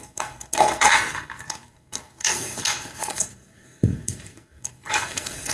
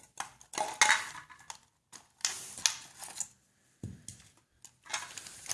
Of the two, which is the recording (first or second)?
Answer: second